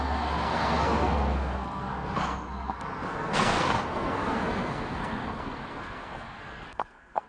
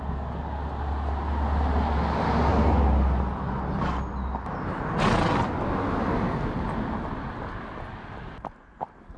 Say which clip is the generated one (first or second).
first